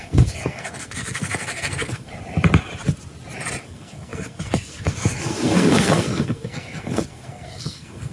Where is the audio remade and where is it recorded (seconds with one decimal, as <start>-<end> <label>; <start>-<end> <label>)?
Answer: 0.0-2.1 remade; 2.1-3.6 recorded; 3.6-8.1 remade